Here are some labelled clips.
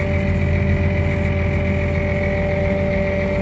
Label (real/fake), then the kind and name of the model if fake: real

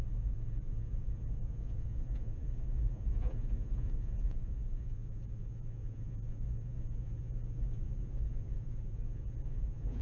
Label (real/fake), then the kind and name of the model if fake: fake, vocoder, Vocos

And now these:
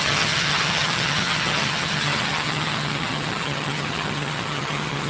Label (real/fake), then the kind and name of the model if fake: fake, vocoder, HiFi-GAN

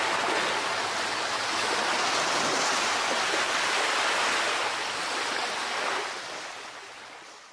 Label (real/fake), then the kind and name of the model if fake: real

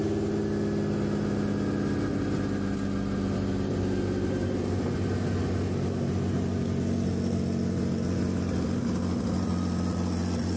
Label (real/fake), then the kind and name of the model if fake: real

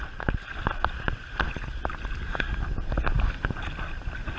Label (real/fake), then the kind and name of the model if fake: real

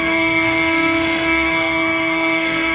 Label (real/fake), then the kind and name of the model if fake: fake, codec, SNAC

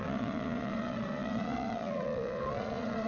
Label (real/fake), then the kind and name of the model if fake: fake, vocoder, Vocos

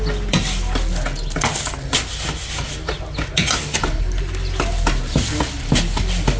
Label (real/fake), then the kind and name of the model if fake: real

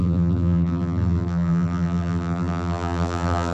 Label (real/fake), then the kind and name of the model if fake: fake, vocoder, BigVGAN v2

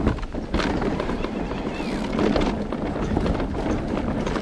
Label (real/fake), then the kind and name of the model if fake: real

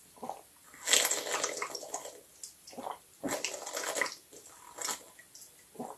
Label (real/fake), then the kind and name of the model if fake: real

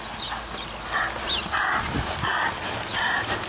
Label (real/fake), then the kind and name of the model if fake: real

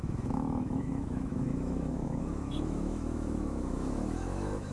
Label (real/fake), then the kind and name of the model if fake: fake, autoencoder, DAC-VAE